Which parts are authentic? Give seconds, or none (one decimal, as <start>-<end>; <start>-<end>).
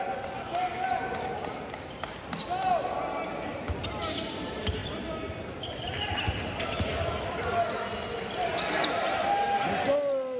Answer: 0.0-10.4